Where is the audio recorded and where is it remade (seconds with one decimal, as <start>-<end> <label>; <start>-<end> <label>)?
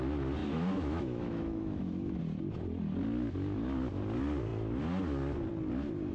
0.0-0.4 recorded; 0.4-2.2 remade; 2.2-6.1 recorded